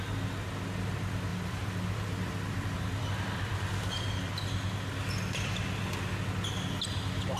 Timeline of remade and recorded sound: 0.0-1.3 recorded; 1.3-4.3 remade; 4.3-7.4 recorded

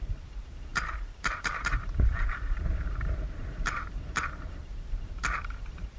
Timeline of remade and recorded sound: 0.0-6.0 remade

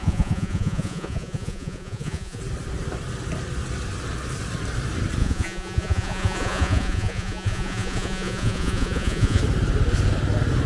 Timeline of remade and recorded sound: 0.0-2.4 remade; 2.4-5.2 recorded; 5.2-9.4 remade; 9.4-10.7 recorded

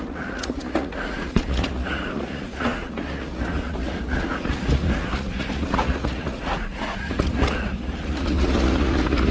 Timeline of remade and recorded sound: 0.0-9.3 remade

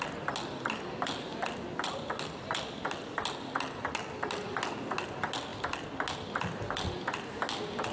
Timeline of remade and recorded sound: 0.0-7.9 recorded

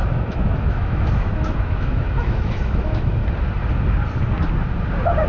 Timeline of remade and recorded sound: 0.0-3.2 remade; 3.2-5.3 recorded

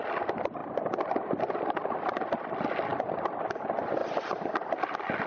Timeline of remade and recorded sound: 0.0-5.3 recorded

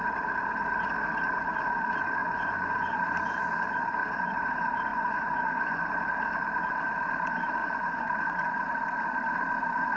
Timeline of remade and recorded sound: 0.0-2.2 recorded; 2.2-3.0 remade; 3.0-4.0 recorded; 4.0-4.5 remade; 4.5-4.9 recorded; 4.9-5.8 remade; 5.8-7.6 recorded; 7.6-8.5 remade; 8.5-10.0 recorded